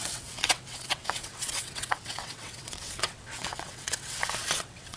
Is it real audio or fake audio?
fake